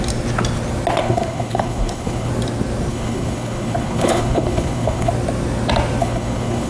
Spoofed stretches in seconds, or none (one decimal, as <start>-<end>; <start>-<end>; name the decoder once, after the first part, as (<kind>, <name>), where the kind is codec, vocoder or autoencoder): 1.0-2.3 (codec, HILCodec); 2.9-5.1; 6.0-6.7